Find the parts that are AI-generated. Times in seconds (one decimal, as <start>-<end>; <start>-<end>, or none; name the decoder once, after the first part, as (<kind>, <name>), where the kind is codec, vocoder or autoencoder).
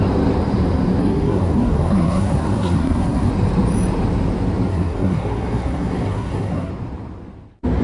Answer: 1.0-3.3 (codec, SNAC); 4.7-6.7